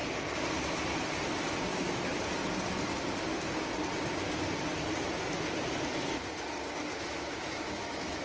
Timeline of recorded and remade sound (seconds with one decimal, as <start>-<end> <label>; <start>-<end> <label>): 0.0-1.7 recorded; 1.7-2.2 remade; 2.2-6.9 recorded; 6.9-8.2 remade